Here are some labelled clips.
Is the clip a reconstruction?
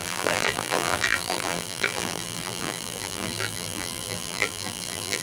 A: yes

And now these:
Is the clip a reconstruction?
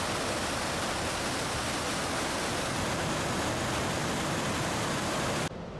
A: no